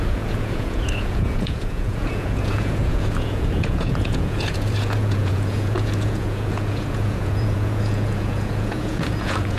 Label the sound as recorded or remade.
remade